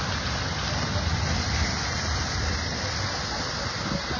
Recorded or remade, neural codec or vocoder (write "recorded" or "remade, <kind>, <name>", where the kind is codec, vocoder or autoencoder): recorded